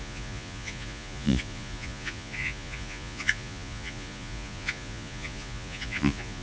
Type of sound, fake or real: fake